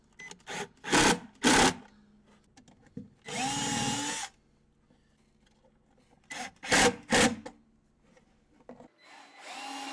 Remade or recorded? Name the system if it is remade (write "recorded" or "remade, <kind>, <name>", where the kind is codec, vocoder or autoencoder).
recorded